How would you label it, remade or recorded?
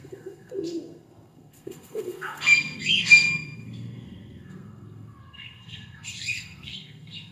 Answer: remade